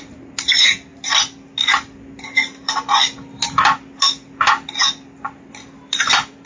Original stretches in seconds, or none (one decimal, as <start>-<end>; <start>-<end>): 0.0-6.5